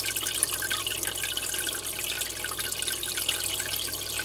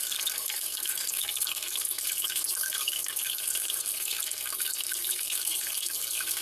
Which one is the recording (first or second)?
first